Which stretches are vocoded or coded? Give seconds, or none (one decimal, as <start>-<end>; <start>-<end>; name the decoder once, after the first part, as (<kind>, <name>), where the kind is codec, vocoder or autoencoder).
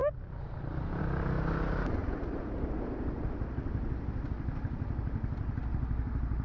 0.0-1.0 (vocoder, BigVGAN v2)